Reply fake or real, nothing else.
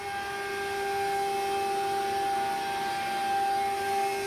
real